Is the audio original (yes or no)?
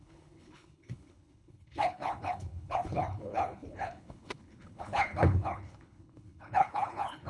no